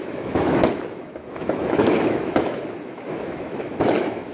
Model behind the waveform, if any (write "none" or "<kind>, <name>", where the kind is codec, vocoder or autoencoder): autoencoder, DAC-VAE